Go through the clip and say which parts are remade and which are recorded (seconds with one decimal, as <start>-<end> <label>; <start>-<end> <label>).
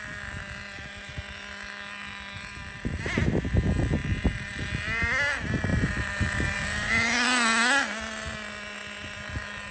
0.0-5.7 recorded; 5.7-6.9 remade; 6.9-9.7 recorded